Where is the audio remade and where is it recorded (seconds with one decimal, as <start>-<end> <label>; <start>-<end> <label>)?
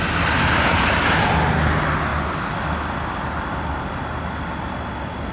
0.0-5.3 recorded